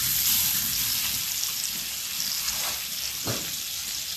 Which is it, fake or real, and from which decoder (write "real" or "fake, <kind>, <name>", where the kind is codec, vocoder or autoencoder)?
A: real